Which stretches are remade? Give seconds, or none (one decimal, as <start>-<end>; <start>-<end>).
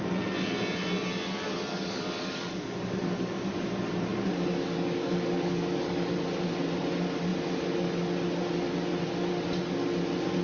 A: 1.7-3.5; 4.1-6.1